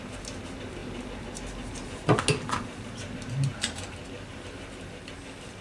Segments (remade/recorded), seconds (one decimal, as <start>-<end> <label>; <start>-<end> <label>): 0.0-5.6 recorded